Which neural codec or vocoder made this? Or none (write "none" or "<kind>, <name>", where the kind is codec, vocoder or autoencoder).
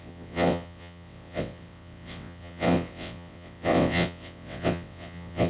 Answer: vocoder, WaveNeXt